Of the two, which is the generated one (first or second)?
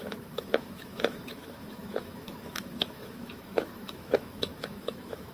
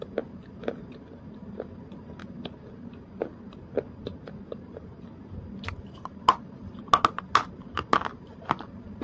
first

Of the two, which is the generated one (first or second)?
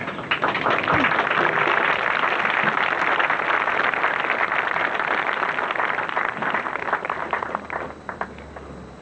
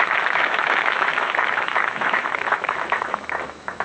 second